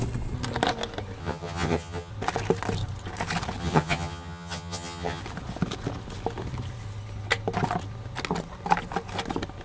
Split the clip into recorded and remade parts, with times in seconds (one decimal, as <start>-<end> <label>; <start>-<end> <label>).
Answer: 0.0-1.2 recorded; 1.2-2.1 remade; 2.1-3.6 recorded; 3.6-5.2 remade; 5.2-9.6 recorded